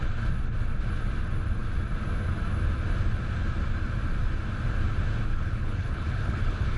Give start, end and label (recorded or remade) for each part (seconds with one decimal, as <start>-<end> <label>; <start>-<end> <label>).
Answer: 0.0-5.3 recorded; 5.3-6.8 remade